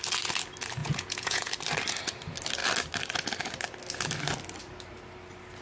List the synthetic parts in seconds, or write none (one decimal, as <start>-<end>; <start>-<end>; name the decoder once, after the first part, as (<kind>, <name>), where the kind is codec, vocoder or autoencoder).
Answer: 0.8-1.5 (vocoder, Vocos)

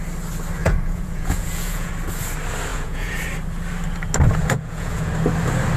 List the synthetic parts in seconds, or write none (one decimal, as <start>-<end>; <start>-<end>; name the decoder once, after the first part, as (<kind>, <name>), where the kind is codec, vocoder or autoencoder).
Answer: 0.6-1.9 (vocoder, Vocos); 2.7-3.2; 4.4-5.1

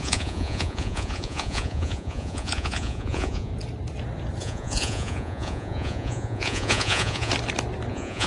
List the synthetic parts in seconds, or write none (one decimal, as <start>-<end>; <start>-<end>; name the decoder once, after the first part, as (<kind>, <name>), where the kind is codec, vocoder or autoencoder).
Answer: 0.0-3.5 (vocoder, Vocos); 4.4-7.3; 7.9-8.3

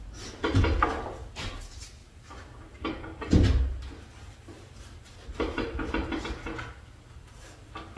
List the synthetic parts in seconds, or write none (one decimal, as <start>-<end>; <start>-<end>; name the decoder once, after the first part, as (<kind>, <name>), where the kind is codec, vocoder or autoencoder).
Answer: none

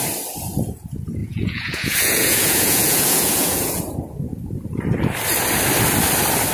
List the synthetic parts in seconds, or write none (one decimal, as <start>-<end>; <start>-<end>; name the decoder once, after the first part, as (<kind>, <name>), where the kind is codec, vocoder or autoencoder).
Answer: 1.2-3.8 (vocoder, Vocos)

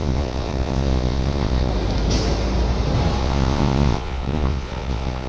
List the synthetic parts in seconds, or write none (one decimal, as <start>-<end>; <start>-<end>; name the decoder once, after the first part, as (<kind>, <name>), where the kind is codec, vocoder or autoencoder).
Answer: 0.0-1.7 (vocoder, Vocos); 3.2-5.3